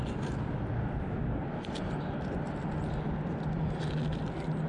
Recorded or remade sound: recorded